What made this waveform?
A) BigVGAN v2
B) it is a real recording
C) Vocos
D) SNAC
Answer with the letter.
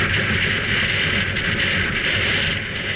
B